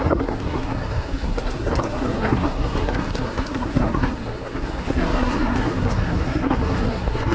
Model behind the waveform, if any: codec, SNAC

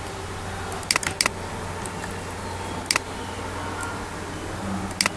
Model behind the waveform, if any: none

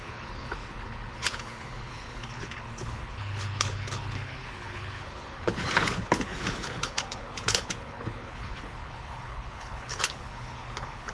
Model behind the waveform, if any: codec, HILCodec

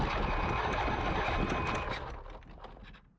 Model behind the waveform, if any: none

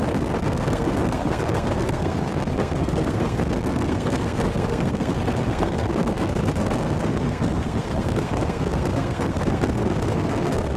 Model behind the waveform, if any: codec, SNAC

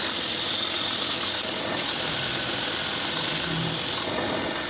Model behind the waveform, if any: none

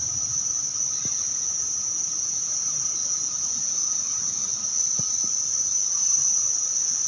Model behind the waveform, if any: none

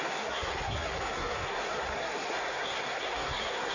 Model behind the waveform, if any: codec, SNAC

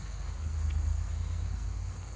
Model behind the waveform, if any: codec, SNAC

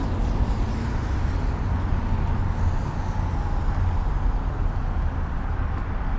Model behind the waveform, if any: none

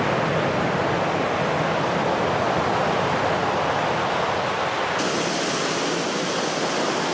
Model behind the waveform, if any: none